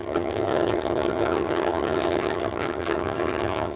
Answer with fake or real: fake